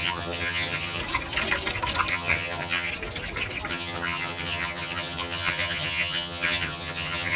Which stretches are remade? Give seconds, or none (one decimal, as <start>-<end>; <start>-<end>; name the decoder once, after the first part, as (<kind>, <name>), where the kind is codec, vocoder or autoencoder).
0.0-1.0 (vocoder, HiFi-GAN); 2.1-2.9; 3.7-7.4